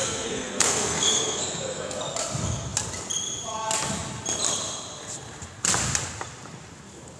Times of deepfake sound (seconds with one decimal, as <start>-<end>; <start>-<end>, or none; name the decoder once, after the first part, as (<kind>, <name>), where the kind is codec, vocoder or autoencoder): 0.0-2.0 (codec, SNAC)